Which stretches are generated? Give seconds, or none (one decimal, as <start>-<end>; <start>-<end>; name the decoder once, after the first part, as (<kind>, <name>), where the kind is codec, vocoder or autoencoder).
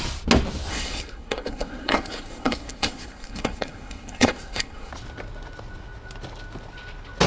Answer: 0.7-4.9 (codec, SNAC)